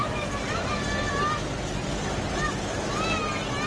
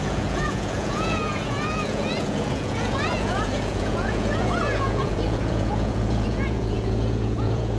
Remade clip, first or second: second